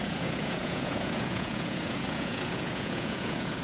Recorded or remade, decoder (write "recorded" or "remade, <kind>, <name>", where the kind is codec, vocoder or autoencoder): remade, vocoder, Vocos